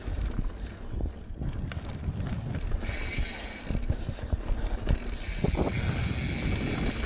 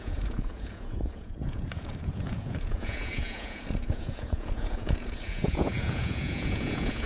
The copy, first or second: second